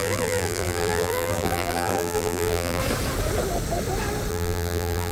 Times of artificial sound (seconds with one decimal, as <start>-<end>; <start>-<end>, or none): 0.0-2.8; 4.3-5.1